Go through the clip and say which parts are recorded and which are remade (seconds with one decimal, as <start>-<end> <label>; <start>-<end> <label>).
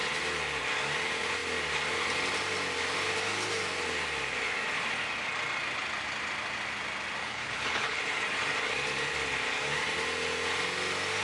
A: 0.0-7.2 recorded; 7.2-8.0 remade; 8.0-11.2 recorded